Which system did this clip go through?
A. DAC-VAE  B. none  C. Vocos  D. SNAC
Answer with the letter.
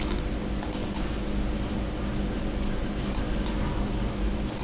B